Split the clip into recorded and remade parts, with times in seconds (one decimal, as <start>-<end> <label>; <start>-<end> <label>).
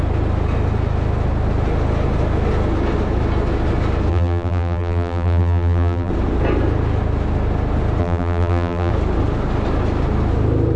0.0-4.1 recorded; 4.1-6.1 remade; 6.1-8.0 recorded; 8.0-8.9 remade; 8.9-10.8 recorded